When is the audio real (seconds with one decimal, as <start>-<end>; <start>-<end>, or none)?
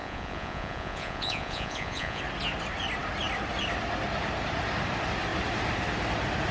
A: 2.2-6.5